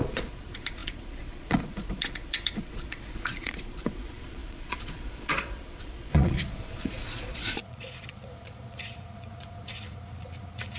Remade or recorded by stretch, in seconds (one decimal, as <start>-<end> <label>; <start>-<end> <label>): 0.0-10.8 remade